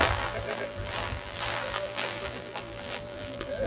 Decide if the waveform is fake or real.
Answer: fake